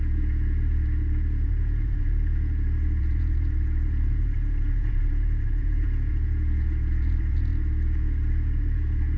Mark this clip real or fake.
fake